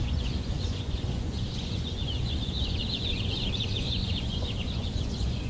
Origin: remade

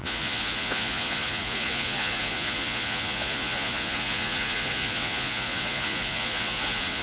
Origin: remade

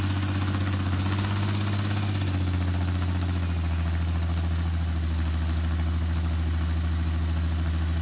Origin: recorded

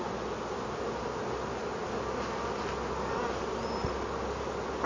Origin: recorded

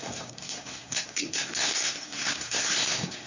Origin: remade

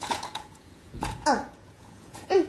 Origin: remade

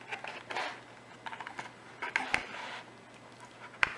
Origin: recorded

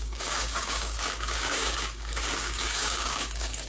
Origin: remade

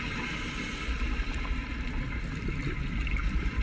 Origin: recorded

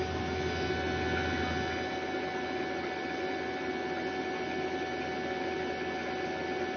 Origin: recorded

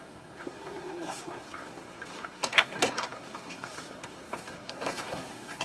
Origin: remade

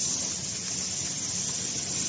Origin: recorded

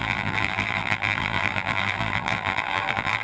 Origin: remade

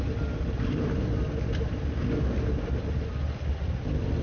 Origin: recorded